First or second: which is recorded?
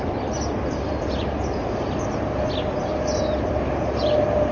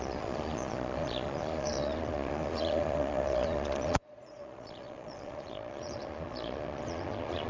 first